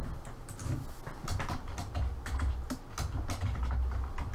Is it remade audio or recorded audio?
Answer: recorded